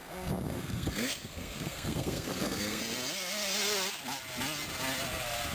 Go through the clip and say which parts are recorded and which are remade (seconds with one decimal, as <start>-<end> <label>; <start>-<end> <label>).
0.0-2.8 remade; 2.8-5.5 recorded